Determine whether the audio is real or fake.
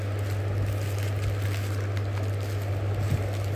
real